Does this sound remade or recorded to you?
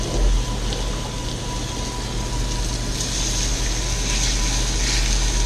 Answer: recorded